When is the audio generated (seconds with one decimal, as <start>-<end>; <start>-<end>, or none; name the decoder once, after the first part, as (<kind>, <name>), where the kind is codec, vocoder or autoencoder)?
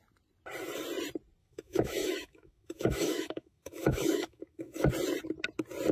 1.4-4.9 (autoencoder, DAC-VAE)